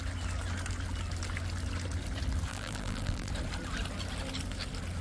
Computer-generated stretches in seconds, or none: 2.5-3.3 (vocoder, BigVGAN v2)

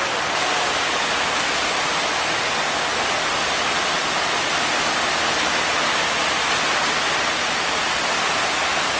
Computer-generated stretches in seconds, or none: none